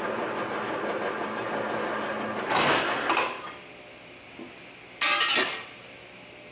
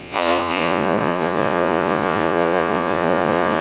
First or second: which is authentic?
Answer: first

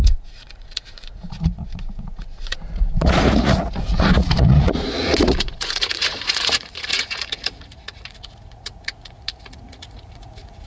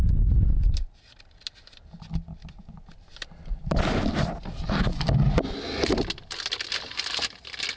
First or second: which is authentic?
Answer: second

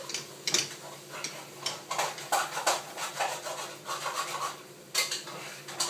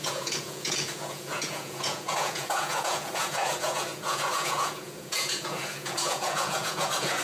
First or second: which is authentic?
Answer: first